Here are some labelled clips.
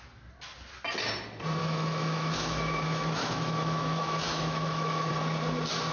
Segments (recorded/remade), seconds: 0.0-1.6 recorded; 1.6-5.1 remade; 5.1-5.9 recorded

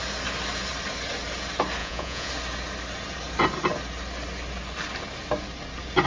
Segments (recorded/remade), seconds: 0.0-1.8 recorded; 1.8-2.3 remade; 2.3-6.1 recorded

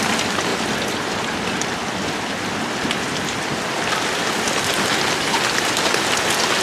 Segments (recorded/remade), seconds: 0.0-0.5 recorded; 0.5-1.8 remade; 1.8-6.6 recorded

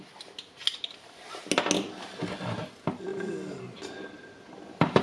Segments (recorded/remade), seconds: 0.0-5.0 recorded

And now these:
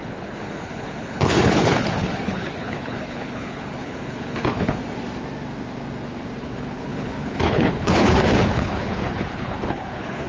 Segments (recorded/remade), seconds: 0.0-4.8 remade; 4.8-6.4 recorded; 6.4-10.3 remade